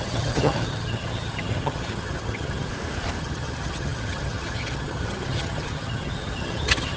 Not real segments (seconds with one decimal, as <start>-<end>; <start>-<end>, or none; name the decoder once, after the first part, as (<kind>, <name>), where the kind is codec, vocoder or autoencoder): 0.0-2.7 (vocoder, HiFi-GAN); 3.2-7.0